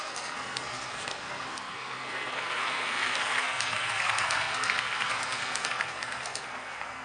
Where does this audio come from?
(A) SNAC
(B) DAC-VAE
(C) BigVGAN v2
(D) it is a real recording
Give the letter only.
A